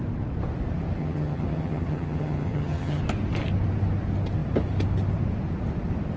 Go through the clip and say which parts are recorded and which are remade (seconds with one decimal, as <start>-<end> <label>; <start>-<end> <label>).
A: 0.0-1.0 recorded; 1.0-3.0 remade; 3.0-6.2 recorded